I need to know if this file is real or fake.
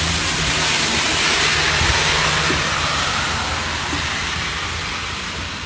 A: real